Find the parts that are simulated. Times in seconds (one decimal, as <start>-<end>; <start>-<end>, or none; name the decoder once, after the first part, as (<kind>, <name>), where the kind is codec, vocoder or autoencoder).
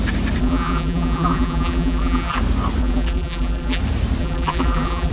0.4-2.4 (vocoder, BigVGAN v2); 2.8-3.8; 4.2-5.1